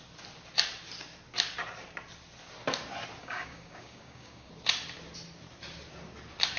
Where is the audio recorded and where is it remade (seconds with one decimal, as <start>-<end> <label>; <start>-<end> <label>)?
0.0-3.2 recorded; 3.2-4.5 remade; 4.5-6.6 recorded